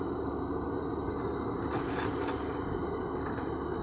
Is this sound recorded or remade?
recorded